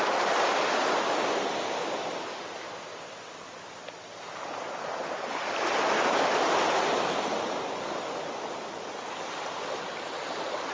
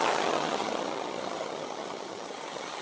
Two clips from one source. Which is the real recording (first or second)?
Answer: first